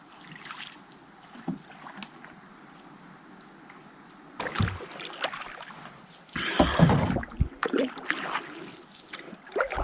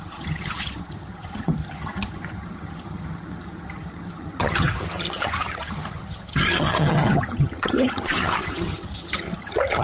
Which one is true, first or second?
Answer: first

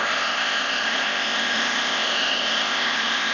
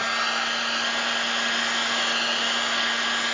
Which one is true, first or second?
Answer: second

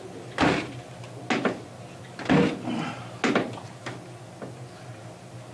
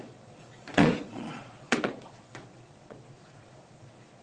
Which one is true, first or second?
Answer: first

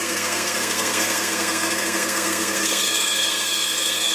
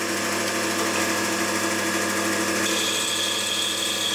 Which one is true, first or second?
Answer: second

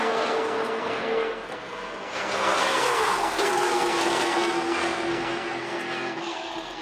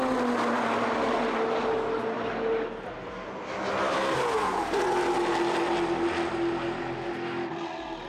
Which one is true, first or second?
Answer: second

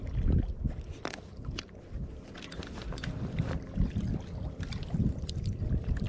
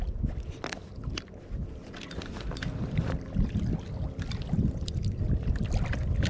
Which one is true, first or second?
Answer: second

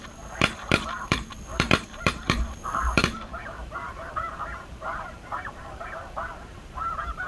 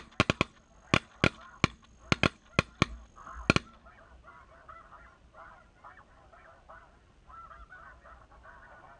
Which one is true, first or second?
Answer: second